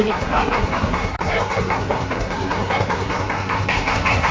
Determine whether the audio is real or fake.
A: fake